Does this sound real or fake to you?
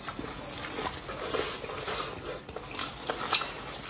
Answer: real